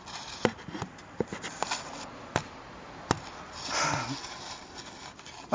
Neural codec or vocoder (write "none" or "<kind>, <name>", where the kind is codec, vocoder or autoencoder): none